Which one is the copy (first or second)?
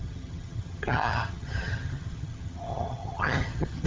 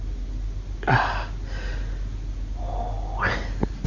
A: first